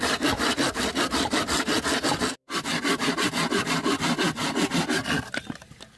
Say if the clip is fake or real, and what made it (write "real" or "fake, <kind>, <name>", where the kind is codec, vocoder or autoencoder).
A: real